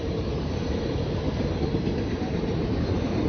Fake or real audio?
fake